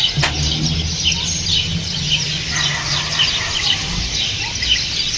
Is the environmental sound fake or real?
real